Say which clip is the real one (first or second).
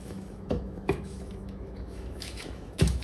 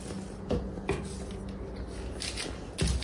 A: second